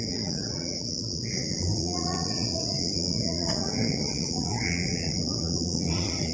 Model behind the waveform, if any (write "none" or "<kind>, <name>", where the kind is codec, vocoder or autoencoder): vocoder, Vocos